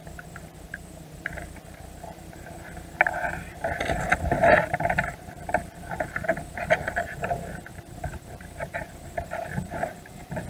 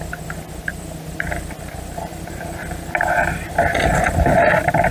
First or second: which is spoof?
first